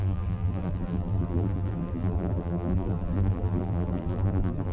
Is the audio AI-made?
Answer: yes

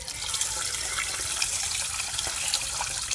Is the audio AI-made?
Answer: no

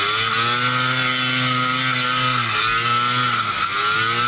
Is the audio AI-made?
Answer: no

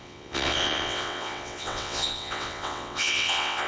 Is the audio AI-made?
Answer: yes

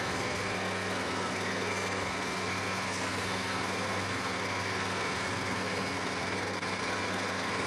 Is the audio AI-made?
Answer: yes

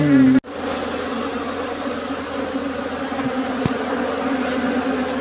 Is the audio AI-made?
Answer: no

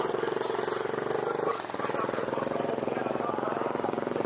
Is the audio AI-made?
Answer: no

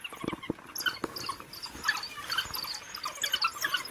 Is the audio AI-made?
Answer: no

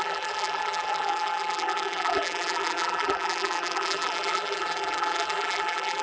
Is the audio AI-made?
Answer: yes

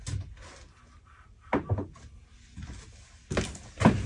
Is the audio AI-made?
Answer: no